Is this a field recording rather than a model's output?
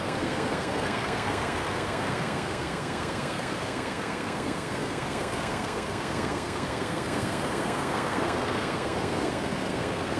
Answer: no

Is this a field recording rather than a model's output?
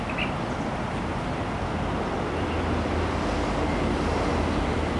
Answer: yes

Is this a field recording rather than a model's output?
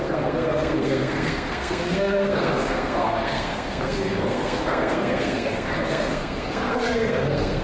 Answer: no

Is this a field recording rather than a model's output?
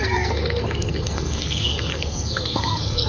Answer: no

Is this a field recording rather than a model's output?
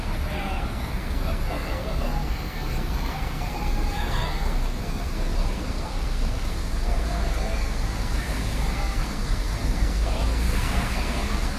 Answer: no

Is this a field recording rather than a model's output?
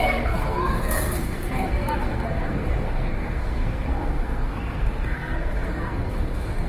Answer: no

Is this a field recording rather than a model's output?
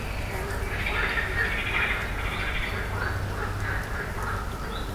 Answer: yes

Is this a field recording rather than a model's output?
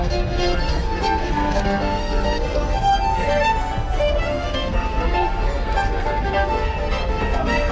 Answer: no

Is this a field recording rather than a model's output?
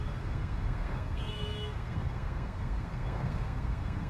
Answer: no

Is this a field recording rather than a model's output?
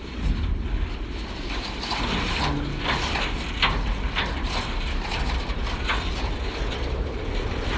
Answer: yes